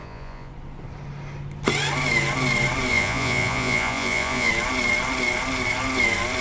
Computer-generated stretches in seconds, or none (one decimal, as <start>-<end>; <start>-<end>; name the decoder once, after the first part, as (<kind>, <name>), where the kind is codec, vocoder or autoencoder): 0.0-0.5 (vocoder, Vocos); 2.9-4.5